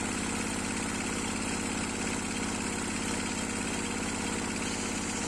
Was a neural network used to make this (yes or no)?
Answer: no